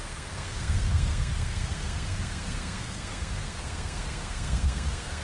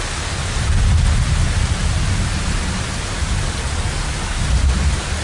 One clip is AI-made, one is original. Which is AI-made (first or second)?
first